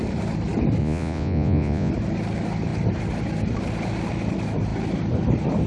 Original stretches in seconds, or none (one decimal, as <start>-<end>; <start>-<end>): 0.0-0.8; 1.9-5.7